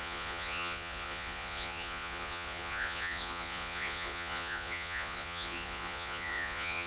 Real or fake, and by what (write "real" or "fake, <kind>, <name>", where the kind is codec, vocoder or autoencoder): fake, vocoder, Vocos